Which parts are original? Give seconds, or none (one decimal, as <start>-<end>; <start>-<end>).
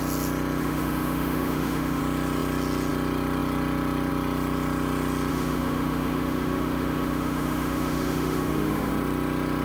0.0-0.6; 2.0-5.3; 8.9-9.6